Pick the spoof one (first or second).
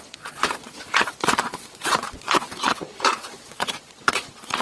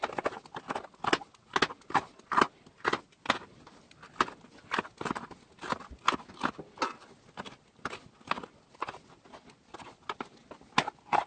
first